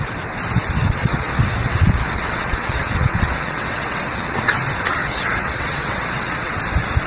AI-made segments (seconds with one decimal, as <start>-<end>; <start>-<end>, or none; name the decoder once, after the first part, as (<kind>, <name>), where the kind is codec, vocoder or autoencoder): 0.8-4.5 (vocoder, WaveNeXt); 5.0-6.5